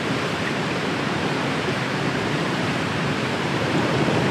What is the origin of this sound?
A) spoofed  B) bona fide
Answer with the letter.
A